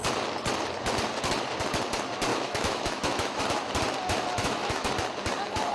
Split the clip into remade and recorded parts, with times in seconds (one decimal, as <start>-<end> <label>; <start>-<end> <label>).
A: 0.0-2.3 recorded; 2.3-3.4 remade; 3.4-4.4 recorded; 4.4-4.9 remade; 4.9-5.7 recorded